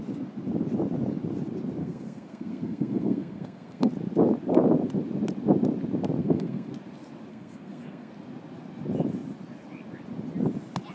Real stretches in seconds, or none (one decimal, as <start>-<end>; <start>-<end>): 0.0-1.8; 3.9-6.2; 6.7-7.3; 8.1-10.9

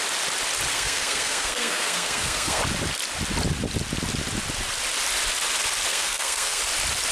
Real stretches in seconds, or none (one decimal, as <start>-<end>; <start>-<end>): 0.0-0.7; 2.6-5.9; 6.6-7.1

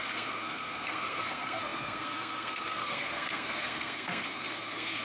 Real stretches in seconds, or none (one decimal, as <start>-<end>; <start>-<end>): none

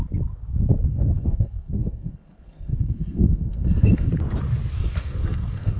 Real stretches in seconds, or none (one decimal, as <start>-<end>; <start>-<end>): 0.0-0.9; 4.1-5.0

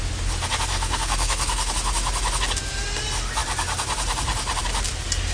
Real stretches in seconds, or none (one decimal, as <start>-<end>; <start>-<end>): 0.0-0.7; 1.7-5.3